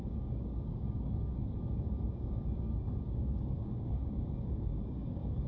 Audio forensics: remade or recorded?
remade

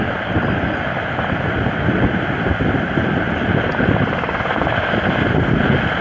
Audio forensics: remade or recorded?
remade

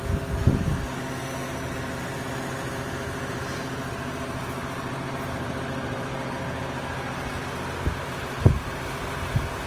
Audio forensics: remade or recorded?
recorded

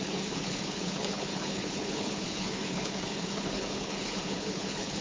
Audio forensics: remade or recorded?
remade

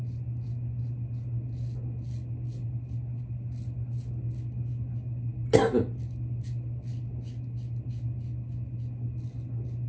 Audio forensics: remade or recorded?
recorded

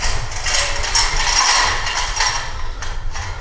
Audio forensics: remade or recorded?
recorded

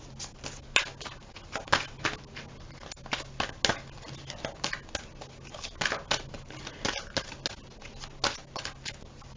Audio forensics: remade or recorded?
recorded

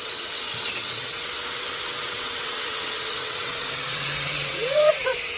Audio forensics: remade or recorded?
remade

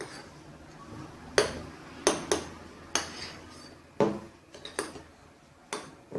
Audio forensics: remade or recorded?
recorded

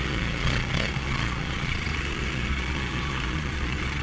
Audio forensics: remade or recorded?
remade